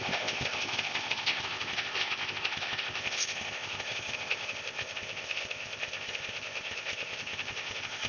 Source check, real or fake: fake